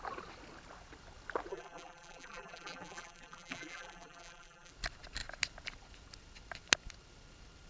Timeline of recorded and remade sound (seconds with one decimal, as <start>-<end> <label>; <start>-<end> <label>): 0.0-1.5 recorded; 1.5-4.7 remade; 4.7-7.7 recorded